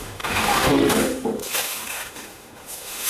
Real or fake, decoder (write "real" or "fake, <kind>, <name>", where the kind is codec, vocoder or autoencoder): fake, autoencoder, DAC-VAE